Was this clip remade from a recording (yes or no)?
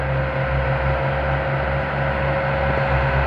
no